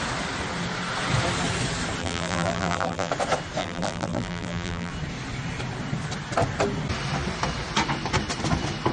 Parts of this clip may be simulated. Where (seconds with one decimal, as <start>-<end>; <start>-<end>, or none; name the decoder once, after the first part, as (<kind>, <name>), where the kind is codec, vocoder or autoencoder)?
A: 2.0-3.1 (vocoder, BigVGAN v2); 3.6-4.9